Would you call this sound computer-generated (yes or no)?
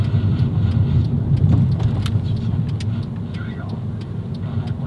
no